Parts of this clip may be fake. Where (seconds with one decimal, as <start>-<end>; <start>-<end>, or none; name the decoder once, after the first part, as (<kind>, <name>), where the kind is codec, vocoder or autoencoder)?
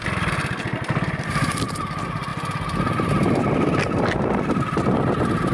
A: none